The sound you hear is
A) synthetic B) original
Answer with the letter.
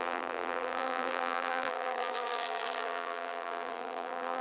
A